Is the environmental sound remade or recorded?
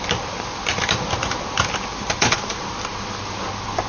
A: recorded